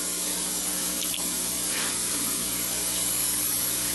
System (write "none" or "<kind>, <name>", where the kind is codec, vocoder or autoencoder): codec, DAC